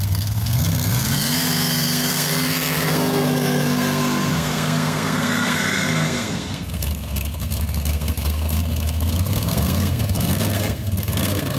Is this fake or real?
fake